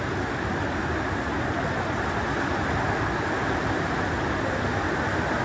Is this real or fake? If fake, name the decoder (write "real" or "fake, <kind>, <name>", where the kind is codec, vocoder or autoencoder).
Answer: real